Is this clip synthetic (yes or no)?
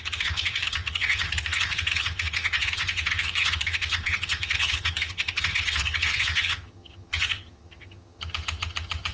yes